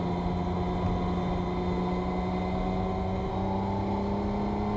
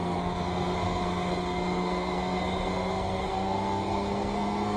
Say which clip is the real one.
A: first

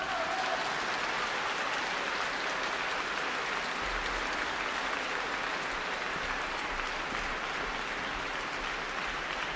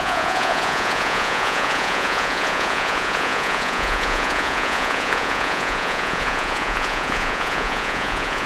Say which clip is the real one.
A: first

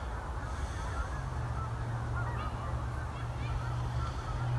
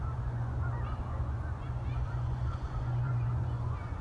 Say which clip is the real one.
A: first